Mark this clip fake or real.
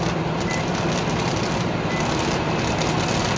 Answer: real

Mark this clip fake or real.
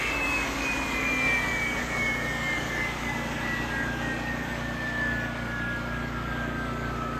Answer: fake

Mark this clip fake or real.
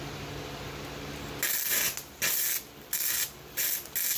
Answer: real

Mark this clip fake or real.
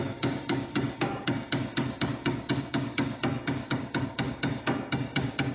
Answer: fake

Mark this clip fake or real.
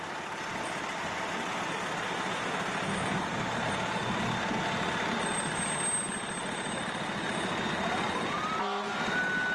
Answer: real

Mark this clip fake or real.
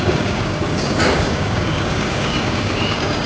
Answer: fake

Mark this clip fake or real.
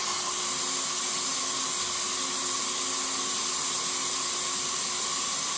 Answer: real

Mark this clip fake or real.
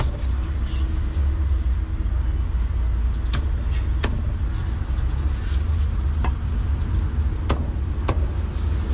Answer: real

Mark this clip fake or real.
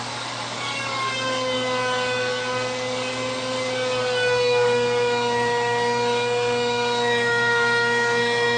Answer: fake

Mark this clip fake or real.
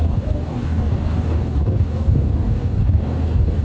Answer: fake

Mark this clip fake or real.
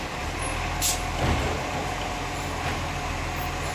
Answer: real